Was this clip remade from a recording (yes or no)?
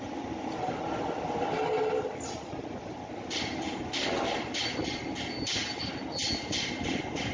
no